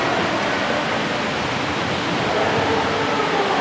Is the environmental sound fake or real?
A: real